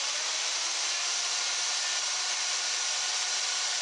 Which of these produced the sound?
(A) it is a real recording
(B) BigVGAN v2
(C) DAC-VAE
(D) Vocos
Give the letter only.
B